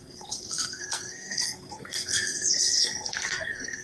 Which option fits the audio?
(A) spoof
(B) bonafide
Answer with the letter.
A